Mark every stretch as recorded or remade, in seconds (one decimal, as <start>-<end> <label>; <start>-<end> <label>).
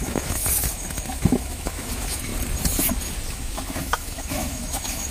0.0-2.3 remade; 2.3-3.3 recorded; 3.3-5.1 remade